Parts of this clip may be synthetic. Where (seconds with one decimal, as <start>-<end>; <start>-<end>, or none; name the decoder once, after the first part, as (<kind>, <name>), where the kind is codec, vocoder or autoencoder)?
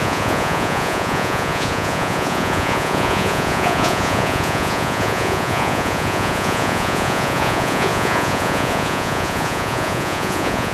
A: 0.0-10.7 (vocoder, Vocos)